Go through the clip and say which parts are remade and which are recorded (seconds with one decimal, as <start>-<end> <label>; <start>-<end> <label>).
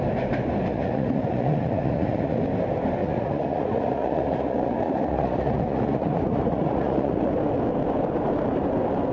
0.0-0.7 recorded; 0.7-2.4 remade; 2.4-3.0 recorded; 3.0-7.3 remade; 7.3-9.1 recorded